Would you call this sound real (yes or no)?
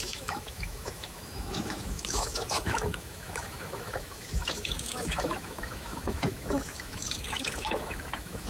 no